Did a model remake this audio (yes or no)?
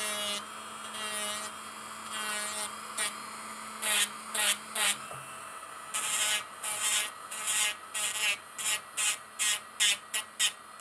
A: no